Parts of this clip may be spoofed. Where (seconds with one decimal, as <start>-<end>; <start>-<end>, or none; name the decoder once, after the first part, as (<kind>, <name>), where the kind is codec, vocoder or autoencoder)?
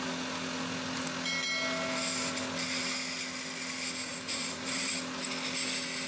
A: 4.1-4.9 (vocoder, BigVGAN v2)